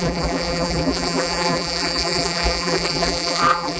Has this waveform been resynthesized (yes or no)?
yes